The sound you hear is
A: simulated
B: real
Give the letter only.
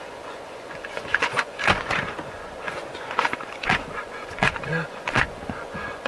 A